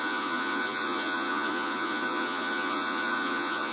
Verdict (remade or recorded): remade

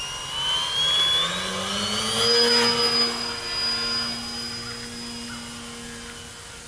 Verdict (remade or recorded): recorded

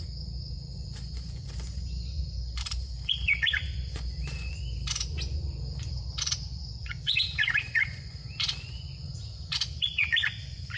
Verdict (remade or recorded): remade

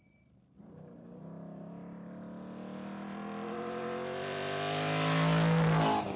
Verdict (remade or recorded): recorded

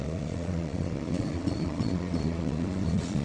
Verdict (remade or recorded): remade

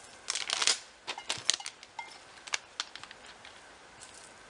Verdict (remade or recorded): recorded